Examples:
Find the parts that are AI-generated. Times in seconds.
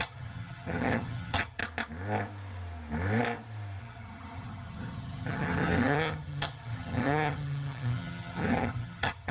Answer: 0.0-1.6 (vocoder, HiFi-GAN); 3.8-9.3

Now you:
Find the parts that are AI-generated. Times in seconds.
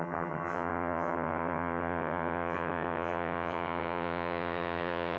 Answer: 0.0-5.2 (vocoder, HiFi-GAN)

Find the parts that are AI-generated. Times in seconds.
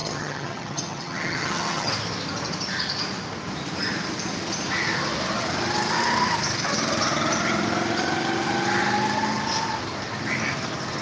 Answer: 0.0-1.9 (vocoder, HiFi-GAN)